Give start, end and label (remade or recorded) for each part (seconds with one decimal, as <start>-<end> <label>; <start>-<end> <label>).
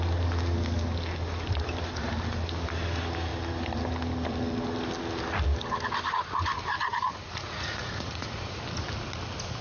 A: 0.0-6.9 recorded; 6.9-8.6 remade; 8.6-9.6 recorded